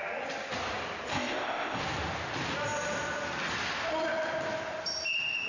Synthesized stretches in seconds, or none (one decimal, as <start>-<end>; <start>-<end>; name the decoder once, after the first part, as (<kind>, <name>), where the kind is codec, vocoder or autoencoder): 1.1-1.8 (codec, ZipCodec)